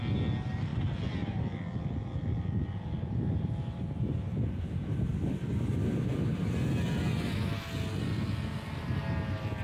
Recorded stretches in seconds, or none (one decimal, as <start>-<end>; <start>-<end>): 0.0-4.3; 4.9-9.6